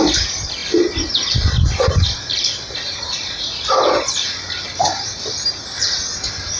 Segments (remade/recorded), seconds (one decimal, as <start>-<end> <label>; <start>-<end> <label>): 0.0-6.6 recorded